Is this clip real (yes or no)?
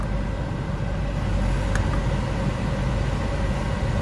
yes